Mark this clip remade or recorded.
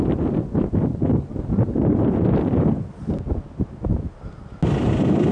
recorded